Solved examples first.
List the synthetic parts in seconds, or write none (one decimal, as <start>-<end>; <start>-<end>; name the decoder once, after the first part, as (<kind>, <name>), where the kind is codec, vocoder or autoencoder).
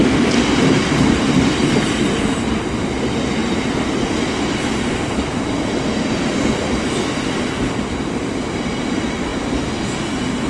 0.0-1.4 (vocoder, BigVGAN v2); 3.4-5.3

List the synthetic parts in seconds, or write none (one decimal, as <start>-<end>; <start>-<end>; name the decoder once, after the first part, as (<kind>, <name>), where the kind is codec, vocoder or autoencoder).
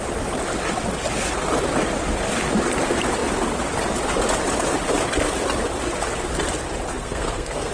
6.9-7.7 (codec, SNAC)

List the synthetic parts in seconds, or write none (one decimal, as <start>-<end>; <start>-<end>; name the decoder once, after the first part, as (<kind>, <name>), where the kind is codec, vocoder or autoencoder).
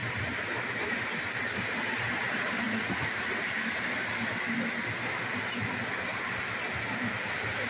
none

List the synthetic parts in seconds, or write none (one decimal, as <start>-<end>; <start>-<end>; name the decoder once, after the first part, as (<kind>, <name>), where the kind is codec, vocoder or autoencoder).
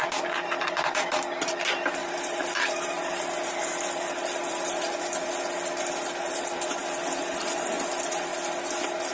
2.0-4.7 (vocoder, BigVGAN v2); 6.8-7.4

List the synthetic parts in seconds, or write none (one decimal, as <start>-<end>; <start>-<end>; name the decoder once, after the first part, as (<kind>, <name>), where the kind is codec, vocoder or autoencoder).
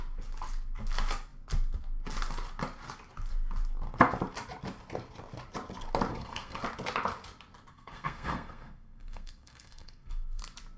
6.1-6.6 (codec, SNAC); 7.7-10.4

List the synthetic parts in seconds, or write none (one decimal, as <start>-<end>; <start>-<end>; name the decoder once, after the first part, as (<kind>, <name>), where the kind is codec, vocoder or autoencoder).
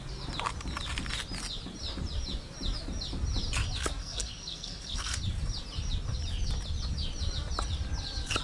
4.0-5.2 (codec, SNAC)